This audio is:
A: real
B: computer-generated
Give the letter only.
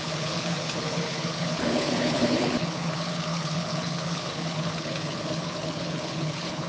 B